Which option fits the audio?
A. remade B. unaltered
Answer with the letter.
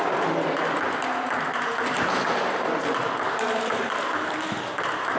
B